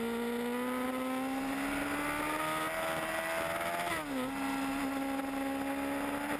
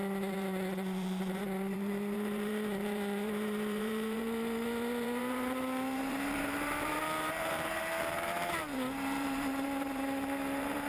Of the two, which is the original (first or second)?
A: first